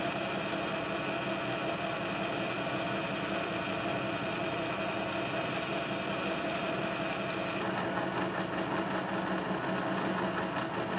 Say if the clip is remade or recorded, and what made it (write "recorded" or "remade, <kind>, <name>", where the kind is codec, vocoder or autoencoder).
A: recorded